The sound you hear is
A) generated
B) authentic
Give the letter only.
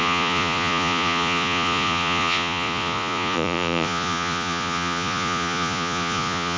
A